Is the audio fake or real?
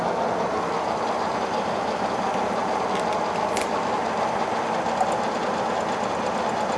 real